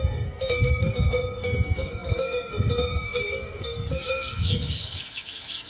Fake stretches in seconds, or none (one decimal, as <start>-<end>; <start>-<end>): 0.0-5.7

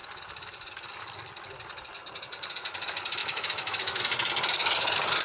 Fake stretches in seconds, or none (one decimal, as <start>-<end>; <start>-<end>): 3.2-4.0

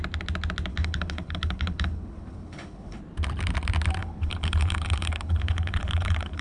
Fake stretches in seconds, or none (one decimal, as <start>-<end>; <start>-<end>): 0.7-3.0; 4.0-6.4